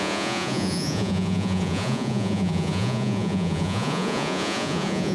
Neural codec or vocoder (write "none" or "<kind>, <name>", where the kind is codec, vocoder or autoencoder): vocoder, Vocos